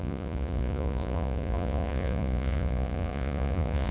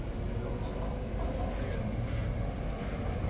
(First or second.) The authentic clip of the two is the second